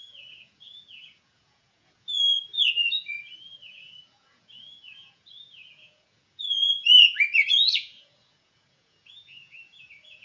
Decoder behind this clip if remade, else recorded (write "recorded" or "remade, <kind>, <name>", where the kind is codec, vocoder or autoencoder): remade, vocoder, Vocos